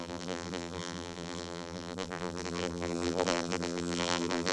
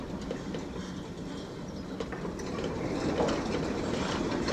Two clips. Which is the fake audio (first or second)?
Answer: first